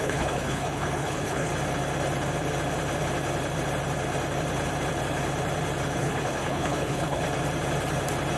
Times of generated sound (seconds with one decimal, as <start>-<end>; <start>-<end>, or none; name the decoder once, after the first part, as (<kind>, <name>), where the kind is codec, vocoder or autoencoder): 0.0-1.5 (codec, HILCodec); 6.0-7.2